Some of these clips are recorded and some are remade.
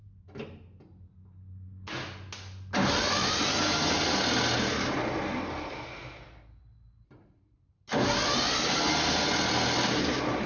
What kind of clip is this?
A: recorded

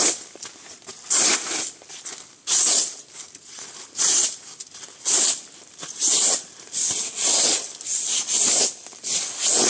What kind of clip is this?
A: recorded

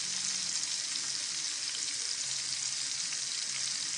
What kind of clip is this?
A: recorded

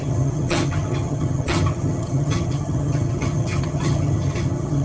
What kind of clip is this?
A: remade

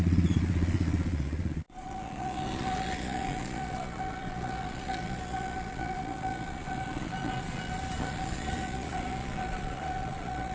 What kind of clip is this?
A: remade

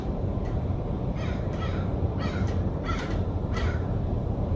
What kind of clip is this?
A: remade